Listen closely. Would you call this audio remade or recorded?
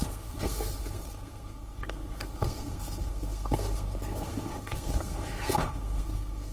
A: remade